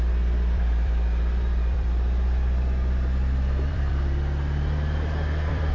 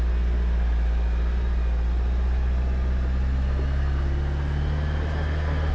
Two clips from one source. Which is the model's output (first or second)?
first